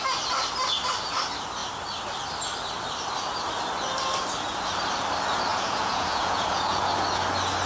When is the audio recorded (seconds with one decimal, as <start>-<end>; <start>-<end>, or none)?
0.0-5.5; 6.9-7.7